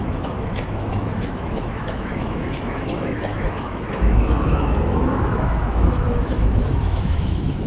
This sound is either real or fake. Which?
fake